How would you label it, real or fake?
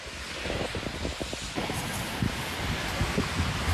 real